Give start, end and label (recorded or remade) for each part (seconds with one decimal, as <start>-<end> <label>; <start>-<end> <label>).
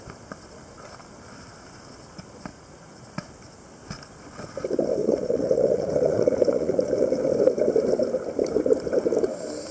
0.0-2.5 recorded; 2.5-3.3 remade; 3.3-5.0 recorded; 5.0-7.2 remade; 7.2-9.7 recorded